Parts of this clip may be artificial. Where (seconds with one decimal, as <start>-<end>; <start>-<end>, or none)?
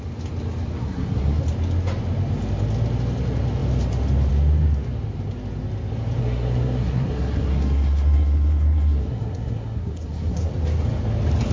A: 0.8-1.4; 6.2-10.5